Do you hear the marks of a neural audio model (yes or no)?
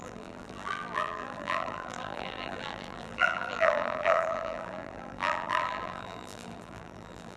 yes